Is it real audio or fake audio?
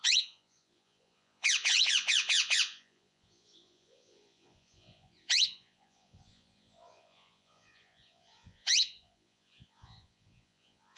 fake